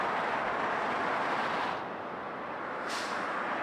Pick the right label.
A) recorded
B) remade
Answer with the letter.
A